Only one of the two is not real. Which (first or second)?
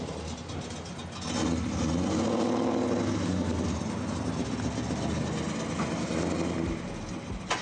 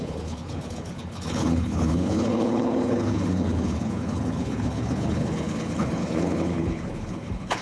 second